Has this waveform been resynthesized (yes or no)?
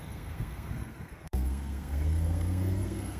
yes